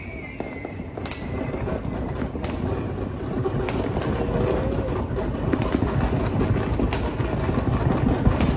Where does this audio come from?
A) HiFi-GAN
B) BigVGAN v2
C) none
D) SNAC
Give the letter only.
C